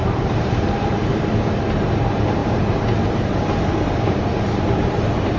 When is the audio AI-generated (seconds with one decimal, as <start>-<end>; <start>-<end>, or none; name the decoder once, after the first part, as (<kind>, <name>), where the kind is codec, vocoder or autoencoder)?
0.0-1.1 (vocoder, BigVGAN v2); 1.8-5.4